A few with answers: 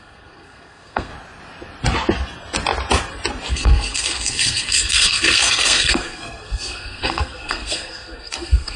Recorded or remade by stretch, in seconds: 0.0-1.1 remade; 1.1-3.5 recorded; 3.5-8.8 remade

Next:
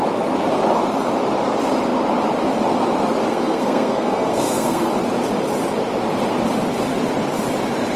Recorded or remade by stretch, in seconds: 0.0-3.3 recorded; 3.3-4.9 remade; 4.9-8.0 recorded

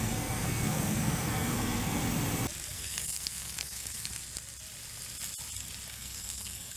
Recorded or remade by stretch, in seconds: 0.0-2.0 remade; 2.0-2.7 recorded; 2.7-4.1 remade; 4.1-5.9 recorded; 5.9-6.8 remade